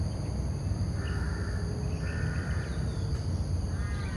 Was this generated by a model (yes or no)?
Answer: no